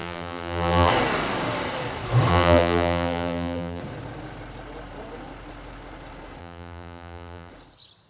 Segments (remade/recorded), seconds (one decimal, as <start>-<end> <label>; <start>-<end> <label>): 0.0-0.9 remade; 0.9-2.3 recorded; 2.3-3.8 remade; 3.8-6.4 recorded; 6.4-7.5 remade; 7.5-8.1 recorded